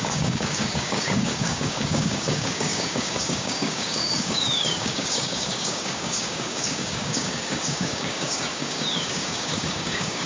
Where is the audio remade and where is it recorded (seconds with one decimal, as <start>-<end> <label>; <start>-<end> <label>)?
0.0-10.3 remade

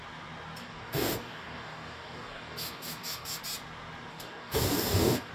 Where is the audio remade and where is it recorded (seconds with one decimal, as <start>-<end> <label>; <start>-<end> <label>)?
0.0-0.6 recorded; 0.6-3.4 remade; 3.4-4.1 recorded; 4.1-5.3 remade